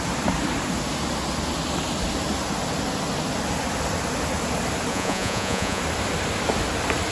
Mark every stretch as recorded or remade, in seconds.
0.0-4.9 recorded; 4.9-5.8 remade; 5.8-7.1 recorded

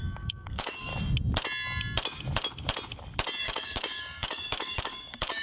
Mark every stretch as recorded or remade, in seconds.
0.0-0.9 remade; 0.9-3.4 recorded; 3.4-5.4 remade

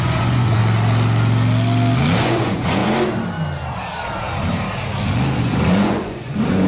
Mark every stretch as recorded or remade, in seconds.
0.0-0.6 remade; 0.6-2.2 recorded; 2.2-2.8 remade; 2.8-5.4 recorded; 5.4-6.7 remade

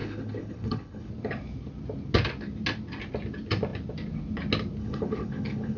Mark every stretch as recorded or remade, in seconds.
0.0-1.1 remade; 1.1-4.8 recorded; 4.8-5.8 remade

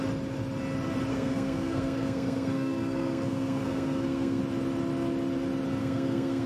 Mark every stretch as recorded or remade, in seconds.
0.0-1.1 recorded; 1.1-4.4 remade; 4.4-5.8 recorded; 5.8-6.5 remade